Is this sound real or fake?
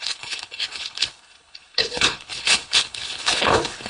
fake